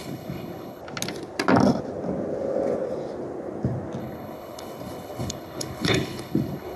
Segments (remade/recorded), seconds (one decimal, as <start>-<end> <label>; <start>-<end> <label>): 0.0-0.8 remade; 0.8-4.0 recorded; 4.0-6.8 remade